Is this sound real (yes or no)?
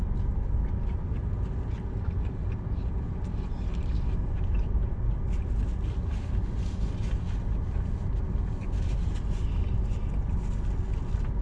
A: yes